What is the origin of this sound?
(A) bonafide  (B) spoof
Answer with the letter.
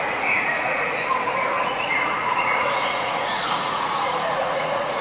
B